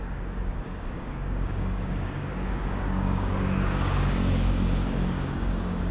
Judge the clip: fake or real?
fake